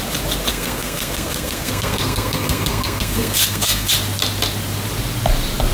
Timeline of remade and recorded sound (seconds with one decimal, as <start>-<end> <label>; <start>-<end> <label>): 0.0-0.5 recorded; 0.5-3.9 remade; 3.9-5.7 recorded